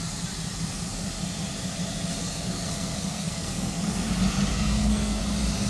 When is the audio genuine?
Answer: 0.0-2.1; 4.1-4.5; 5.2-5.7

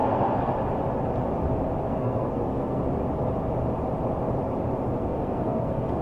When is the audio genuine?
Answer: 0.5-1.9; 2.8-5.0

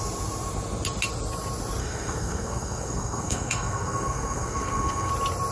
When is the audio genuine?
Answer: 0.0-1.8; 5.1-5.5

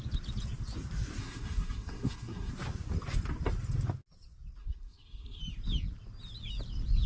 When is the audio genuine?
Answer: 0.0-1.2; 2.5-4.6; 5.4-7.1

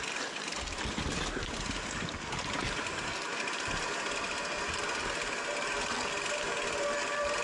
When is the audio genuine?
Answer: 0.0-7.4

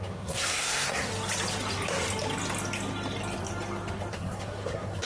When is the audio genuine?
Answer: 1.1-4.1

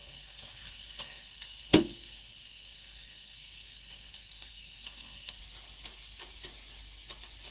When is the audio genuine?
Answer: 5.4-7.5